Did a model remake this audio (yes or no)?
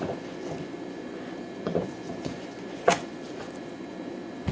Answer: yes